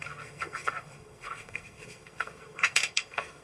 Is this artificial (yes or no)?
yes